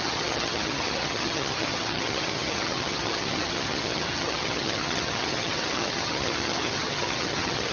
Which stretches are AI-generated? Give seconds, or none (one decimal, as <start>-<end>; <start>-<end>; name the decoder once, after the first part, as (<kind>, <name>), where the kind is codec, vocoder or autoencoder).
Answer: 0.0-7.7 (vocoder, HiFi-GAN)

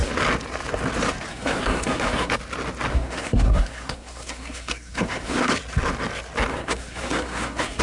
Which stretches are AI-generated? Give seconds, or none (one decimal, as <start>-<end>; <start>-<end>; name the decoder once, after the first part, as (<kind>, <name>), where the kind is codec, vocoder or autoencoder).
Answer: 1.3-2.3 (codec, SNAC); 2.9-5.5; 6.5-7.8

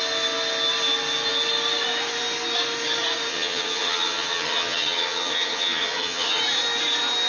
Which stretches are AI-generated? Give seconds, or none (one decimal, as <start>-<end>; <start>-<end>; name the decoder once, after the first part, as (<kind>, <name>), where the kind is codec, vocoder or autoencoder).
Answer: 3.3-6.4 (vocoder, HiFi-GAN)

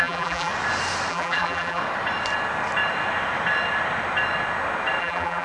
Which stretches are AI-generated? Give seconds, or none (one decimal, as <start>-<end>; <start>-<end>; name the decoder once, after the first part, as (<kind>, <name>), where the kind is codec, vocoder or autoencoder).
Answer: 0.0-0.5 (vocoder, BigVGAN v2); 1.1-1.8; 5.0-5.4